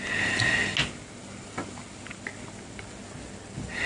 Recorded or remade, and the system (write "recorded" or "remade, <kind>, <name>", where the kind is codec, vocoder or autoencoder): recorded